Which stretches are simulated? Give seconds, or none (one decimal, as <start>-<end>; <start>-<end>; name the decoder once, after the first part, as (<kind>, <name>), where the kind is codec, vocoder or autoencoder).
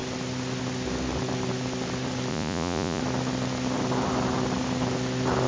2.3-3.0 (vocoder, Vocos)